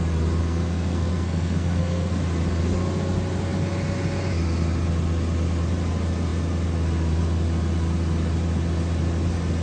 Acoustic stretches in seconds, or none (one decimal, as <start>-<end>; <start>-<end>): 0.0-0.4; 2.2-9.6